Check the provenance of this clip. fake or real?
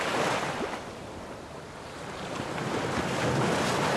real